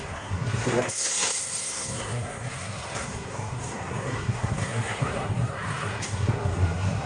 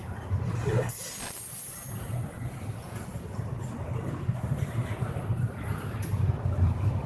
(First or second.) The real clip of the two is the second